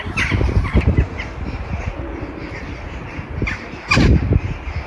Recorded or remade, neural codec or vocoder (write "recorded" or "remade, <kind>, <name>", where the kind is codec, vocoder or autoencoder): recorded